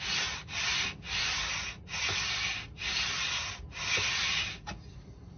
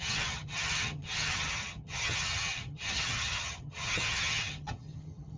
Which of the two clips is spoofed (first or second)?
second